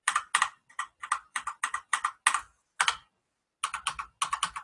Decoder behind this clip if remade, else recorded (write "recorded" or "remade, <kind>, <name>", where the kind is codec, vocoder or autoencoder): recorded